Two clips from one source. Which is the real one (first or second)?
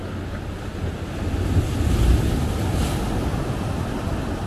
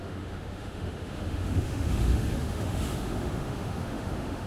first